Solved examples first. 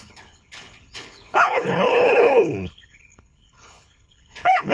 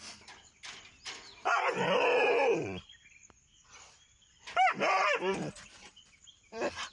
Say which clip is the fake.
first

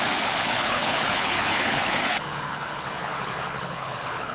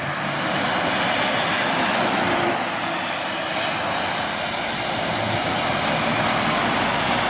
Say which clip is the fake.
first